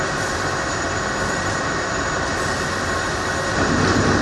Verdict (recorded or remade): remade